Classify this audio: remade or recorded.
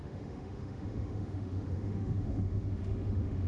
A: remade